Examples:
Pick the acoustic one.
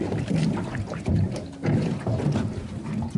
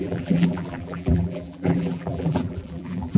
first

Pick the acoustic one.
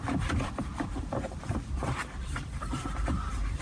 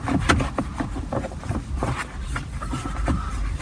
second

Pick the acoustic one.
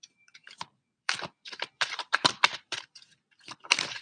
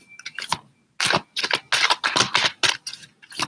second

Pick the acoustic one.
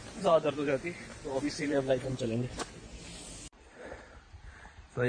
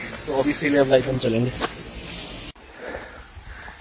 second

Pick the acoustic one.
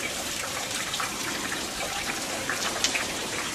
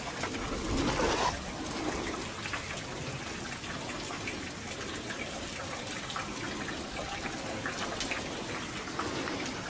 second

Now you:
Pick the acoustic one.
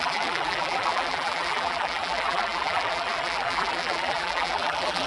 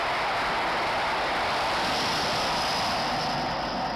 second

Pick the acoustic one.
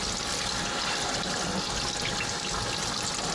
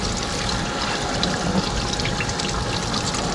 first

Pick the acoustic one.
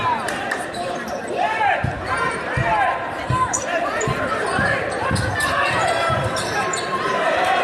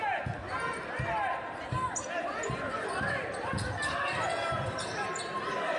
second